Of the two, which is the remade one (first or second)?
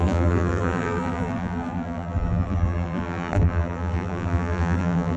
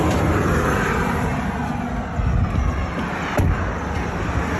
first